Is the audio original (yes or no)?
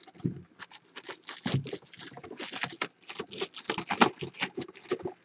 yes